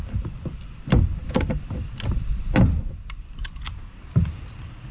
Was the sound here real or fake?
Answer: real